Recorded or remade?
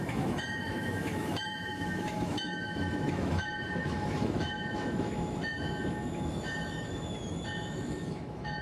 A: remade